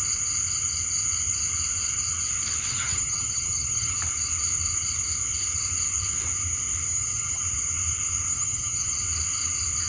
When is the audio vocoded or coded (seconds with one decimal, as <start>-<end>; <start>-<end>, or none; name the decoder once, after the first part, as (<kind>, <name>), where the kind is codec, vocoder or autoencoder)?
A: 2.7-4.0 (vocoder, HiFi-GAN); 6.9-7.4; 8.3-9.0